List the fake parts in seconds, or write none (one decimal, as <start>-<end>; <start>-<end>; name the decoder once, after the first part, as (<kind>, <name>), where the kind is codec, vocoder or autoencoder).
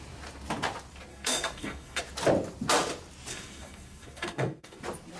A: 1.1-2.0 (codec, SNAC); 3.3-4.8